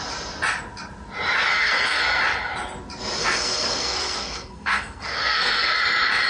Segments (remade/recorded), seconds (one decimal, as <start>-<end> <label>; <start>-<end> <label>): 0.0-1.6 recorded; 1.6-2.2 remade; 2.2-3.2 recorded; 3.2-5.7 remade; 5.7-6.3 recorded